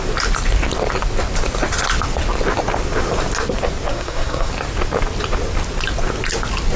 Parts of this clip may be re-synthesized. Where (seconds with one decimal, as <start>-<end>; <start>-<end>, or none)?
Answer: 3.9-4.5